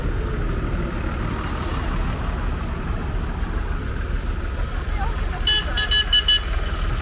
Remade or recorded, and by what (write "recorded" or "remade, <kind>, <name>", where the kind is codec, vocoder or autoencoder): recorded